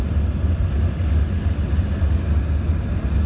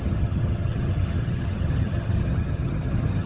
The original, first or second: first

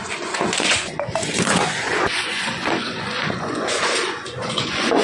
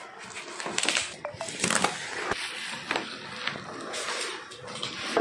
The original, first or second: second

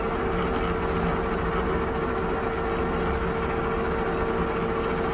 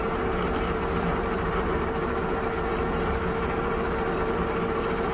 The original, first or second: first